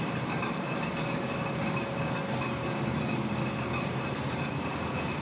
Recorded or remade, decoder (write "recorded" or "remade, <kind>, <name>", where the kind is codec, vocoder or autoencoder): recorded